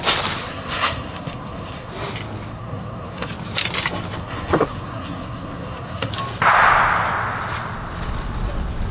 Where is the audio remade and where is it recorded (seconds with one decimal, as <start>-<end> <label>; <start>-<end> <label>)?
0.0-0.4 recorded; 0.4-1.9 remade; 1.9-2.5 recorded; 2.5-3.3 remade; 3.3-4.2 recorded; 4.2-6.1 remade; 6.1-8.9 recorded